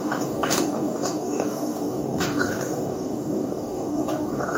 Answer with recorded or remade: remade